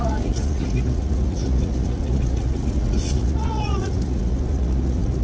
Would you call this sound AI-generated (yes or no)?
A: yes